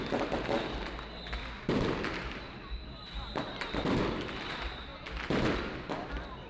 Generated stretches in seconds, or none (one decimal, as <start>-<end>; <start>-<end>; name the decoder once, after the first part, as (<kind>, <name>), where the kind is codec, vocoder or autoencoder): 2.8-4.0 (vocoder, BigVGAN v2)